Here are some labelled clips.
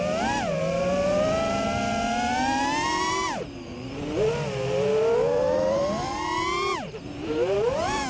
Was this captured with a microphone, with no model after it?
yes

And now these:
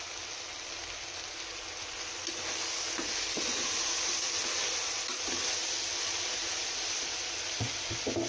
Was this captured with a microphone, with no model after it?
yes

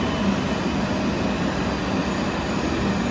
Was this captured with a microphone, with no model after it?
yes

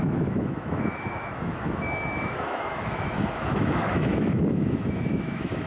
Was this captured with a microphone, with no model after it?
no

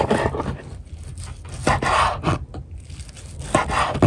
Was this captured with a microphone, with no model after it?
yes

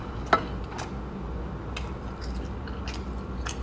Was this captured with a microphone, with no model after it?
yes